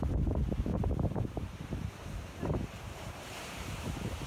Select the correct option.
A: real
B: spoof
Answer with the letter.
B